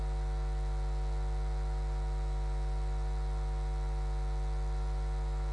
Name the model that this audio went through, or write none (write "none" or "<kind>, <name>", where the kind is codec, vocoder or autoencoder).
none